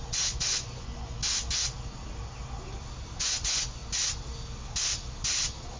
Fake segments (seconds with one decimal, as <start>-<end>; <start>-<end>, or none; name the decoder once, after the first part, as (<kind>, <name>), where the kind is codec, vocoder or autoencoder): 0.0-1.2 (vocoder, Vocos); 3.2-3.8